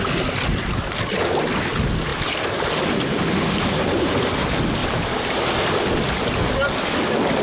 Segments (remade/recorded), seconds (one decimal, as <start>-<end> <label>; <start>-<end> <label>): 0.0-7.4 recorded